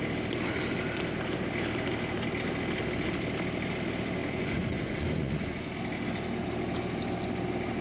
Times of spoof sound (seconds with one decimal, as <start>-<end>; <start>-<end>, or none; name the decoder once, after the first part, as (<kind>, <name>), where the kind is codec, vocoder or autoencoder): 4.2-5.7 (vocoder, Vocos)